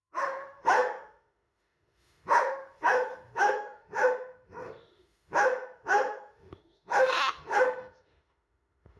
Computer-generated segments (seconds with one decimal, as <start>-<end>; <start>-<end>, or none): 0.0-9.0